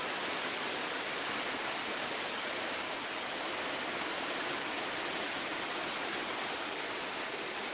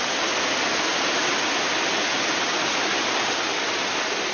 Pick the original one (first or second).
second